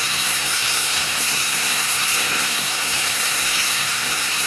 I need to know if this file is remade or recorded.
remade